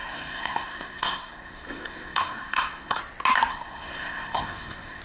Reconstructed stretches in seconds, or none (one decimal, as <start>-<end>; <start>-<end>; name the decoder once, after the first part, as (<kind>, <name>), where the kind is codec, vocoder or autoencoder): 0.0-3.0 (codec, SNAC); 3.5-5.0